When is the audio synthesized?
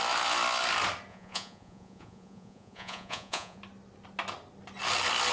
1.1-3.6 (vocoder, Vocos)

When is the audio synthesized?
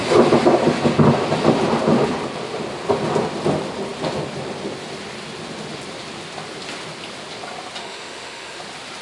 7.8-8.6 (autoencoder, DAC-VAE)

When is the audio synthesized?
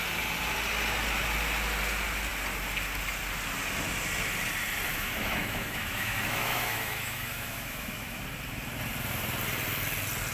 4.9-8.2 (autoencoder, DAC-VAE)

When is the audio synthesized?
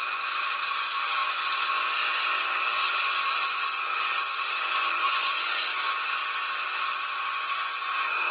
0.0-6.2 (vocoder, Vocos); 7.2-8.3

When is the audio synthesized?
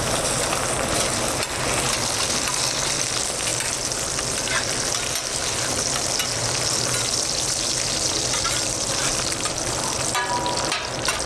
none